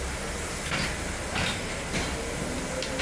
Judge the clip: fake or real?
real